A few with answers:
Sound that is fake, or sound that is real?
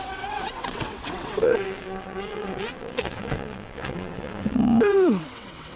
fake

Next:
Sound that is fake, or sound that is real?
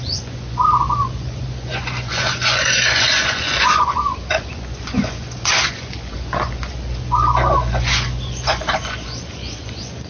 fake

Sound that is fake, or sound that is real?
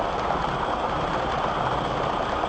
real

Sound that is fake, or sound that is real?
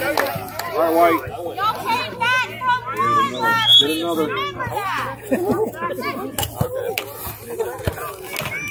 real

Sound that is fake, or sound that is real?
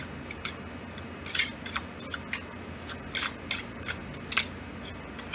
real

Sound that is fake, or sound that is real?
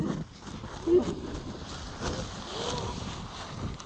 real